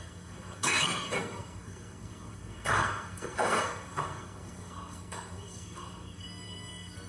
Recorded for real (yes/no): no